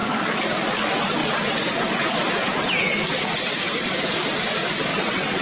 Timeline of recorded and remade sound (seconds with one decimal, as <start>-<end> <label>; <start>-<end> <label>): 0.0-4.9 recorded; 4.9-5.4 remade